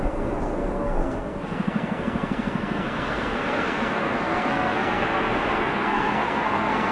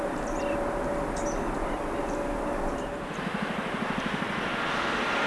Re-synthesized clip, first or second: first